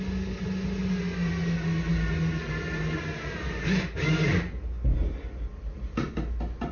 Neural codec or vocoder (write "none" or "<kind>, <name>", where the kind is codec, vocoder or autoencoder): none